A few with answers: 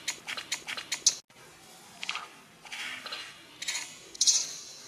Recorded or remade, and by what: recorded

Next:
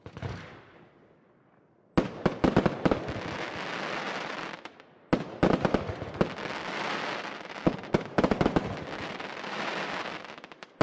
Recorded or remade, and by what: recorded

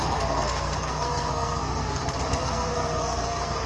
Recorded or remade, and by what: remade, codec, SNAC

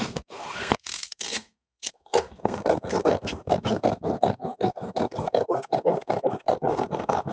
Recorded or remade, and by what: remade, codec, SNAC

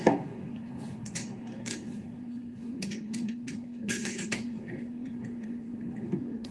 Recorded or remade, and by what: remade, codec, SNAC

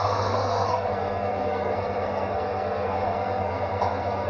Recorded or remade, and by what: remade, codec, SNAC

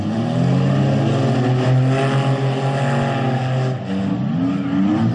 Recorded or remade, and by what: recorded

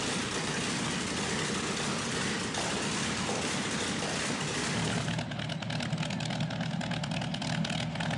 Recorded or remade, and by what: recorded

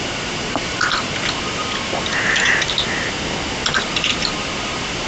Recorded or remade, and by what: recorded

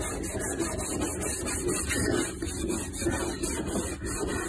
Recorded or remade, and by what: recorded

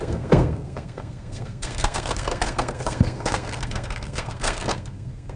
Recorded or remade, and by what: remade, codec, SNAC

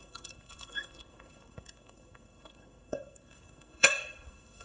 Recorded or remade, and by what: remade, codec, SNAC